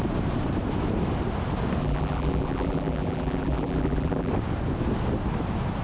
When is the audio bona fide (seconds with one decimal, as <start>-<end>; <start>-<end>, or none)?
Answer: 0.0-1.8; 4.3-5.8